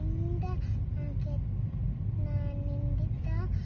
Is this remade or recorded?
recorded